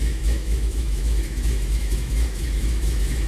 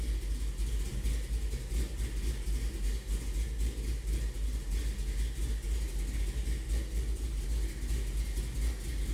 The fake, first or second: first